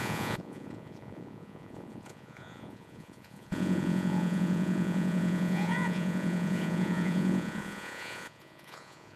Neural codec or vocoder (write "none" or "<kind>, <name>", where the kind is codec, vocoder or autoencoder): vocoder, Vocos